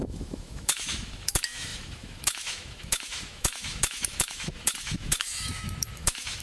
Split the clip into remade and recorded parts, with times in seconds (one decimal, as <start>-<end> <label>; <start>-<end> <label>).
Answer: 0.0-6.4 remade